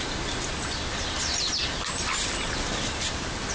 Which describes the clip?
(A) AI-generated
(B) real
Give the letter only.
B